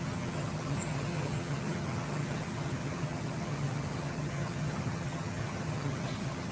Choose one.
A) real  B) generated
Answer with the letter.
B